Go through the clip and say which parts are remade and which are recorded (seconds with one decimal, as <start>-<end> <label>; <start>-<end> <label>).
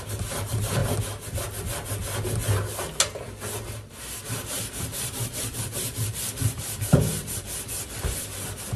0.0-0.8 remade; 0.8-3.9 recorded; 3.9-8.8 remade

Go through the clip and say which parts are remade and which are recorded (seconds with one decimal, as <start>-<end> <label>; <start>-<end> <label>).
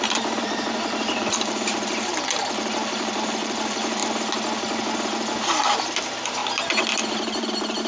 0.0-4.0 remade; 4.0-5.8 recorded; 5.8-6.4 remade; 6.4-7.1 recorded; 7.1-7.9 remade